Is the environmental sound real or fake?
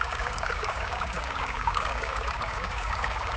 fake